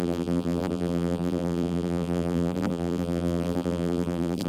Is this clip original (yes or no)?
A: no